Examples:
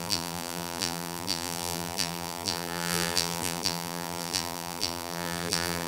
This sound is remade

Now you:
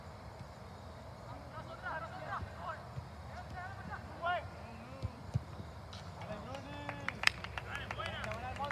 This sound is recorded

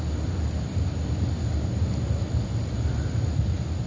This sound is recorded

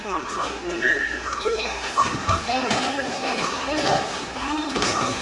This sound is remade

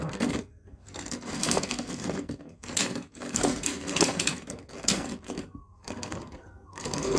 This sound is remade